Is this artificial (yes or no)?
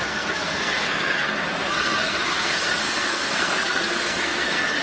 yes